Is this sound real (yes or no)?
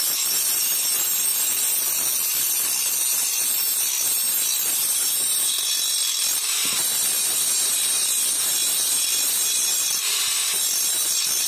yes